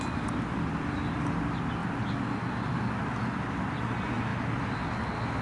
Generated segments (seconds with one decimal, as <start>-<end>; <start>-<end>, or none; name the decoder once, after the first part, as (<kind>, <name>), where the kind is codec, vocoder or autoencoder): none